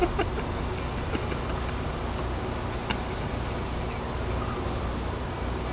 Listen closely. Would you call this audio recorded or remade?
recorded